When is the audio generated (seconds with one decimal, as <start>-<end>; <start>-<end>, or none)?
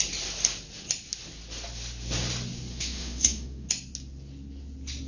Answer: 2.7-3.7